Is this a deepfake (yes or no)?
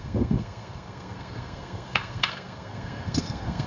yes